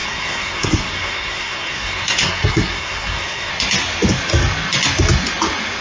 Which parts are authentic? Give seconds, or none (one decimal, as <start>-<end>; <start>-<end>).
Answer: 3.5-5.8